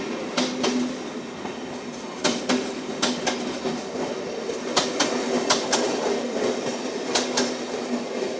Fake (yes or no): no